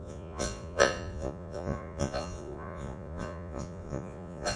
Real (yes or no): no